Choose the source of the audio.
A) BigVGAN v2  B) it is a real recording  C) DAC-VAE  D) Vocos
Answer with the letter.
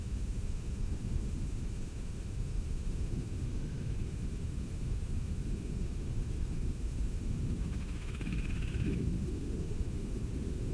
C